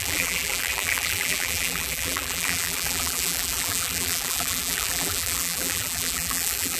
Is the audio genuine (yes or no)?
no